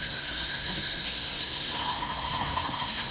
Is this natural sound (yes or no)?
no